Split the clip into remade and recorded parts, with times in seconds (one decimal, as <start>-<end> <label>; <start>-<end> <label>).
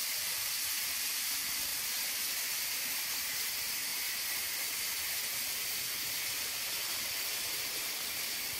0.0-0.5 remade; 0.5-8.6 recorded